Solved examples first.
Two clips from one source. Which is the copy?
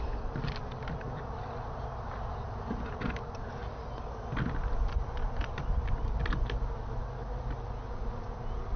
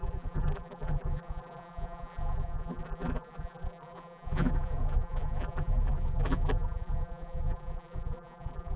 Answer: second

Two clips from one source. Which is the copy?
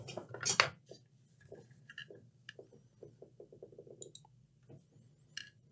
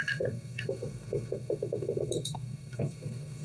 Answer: second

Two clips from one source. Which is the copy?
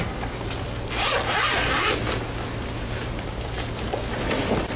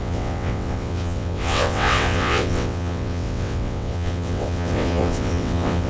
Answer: second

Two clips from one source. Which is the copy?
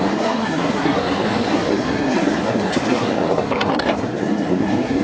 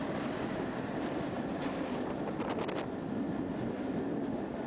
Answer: first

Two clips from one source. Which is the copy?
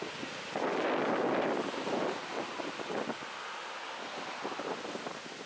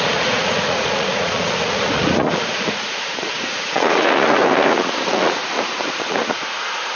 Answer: second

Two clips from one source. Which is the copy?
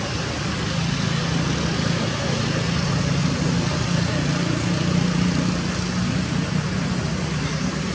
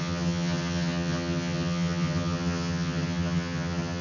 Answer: second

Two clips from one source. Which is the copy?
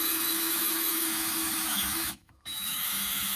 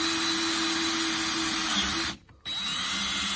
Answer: first